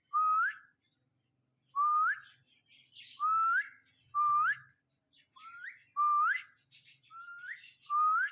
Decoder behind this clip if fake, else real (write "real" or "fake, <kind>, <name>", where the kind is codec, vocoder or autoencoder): real